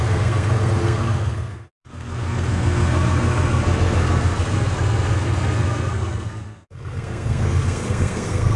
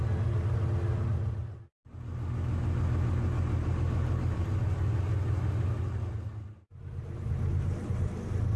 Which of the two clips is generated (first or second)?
first